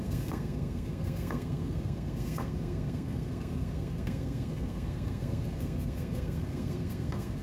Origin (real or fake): fake